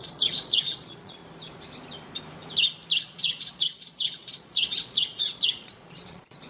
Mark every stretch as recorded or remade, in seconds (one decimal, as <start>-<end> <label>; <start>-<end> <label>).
0.0-1.2 remade; 1.2-3.0 recorded; 3.0-6.5 remade